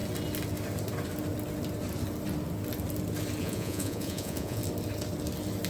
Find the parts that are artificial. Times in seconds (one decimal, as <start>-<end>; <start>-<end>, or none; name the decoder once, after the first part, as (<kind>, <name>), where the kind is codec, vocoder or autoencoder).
3.4-4.6 (vocoder, Vocos)